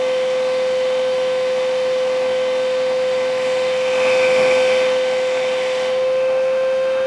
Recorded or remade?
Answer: remade